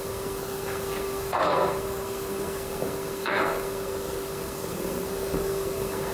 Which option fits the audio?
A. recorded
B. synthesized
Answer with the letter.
B